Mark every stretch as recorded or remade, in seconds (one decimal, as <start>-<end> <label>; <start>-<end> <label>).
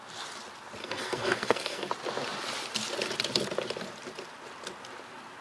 0.0-0.8 recorded; 0.8-1.9 remade; 1.9-5.4 recorded